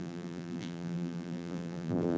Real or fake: fake